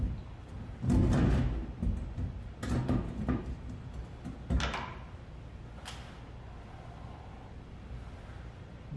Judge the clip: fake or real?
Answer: real